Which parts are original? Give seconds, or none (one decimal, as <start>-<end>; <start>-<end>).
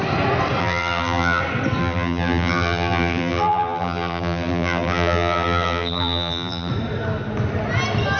0.0-0.6; 1.4-1.8; 6.7-8.2